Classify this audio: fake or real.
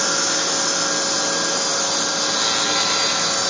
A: real